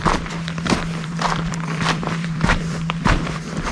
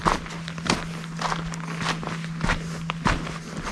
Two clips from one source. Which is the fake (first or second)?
first